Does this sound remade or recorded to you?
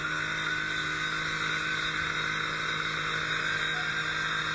recorded